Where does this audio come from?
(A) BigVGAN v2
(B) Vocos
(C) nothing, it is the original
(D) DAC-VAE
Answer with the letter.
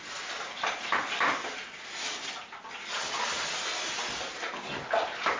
C